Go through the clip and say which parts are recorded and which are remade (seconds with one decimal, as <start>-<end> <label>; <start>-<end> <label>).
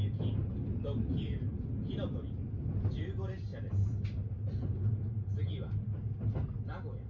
0.0-7.1 recorded